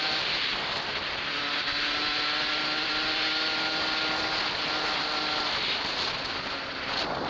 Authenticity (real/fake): real